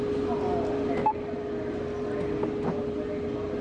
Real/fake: real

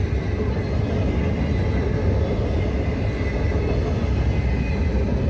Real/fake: real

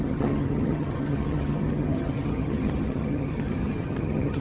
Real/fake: fake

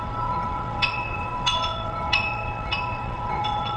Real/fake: fake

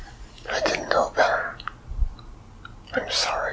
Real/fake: real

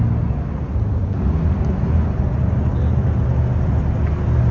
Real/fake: real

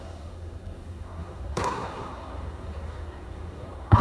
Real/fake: fake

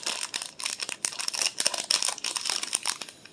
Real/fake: real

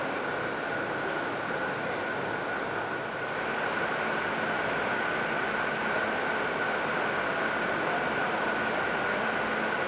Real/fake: real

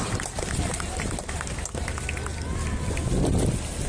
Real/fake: real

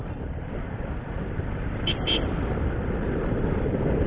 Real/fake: real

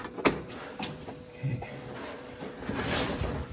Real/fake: fake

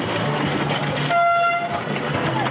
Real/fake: real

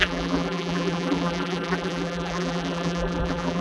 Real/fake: fake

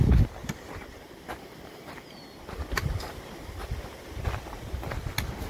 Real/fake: fake